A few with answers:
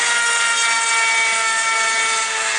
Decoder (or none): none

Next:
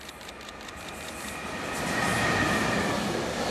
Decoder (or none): vocoder, BigVGAN v2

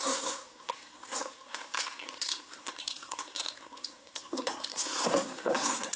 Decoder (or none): codec, SNAC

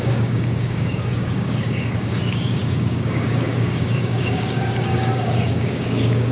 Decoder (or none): codec, DAC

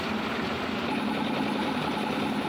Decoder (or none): none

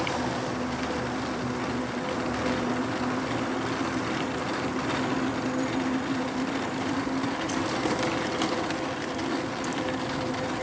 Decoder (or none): none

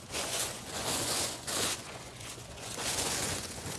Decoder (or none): vocoder, Vocos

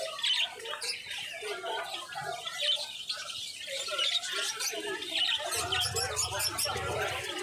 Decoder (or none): none